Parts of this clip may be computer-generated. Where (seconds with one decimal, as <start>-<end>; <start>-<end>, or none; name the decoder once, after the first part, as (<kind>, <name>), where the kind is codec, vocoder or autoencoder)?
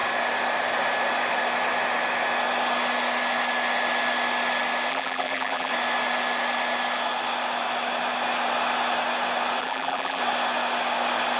4.9-5.7 (vocoder, BigVGAN v2); 9.6-10.2